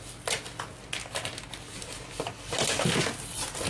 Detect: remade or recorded recorded